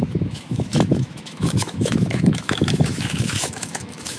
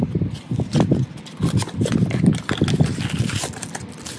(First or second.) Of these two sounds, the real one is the second